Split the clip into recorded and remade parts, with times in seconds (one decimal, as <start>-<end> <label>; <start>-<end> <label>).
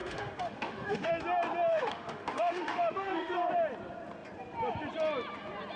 0.0-1.1 remade; 1.1-1.7 recorded; 1.7-3.3 remade; 3.3-5.8 recorded